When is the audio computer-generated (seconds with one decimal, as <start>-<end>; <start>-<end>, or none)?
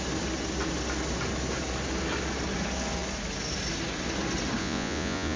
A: 4.6-5.4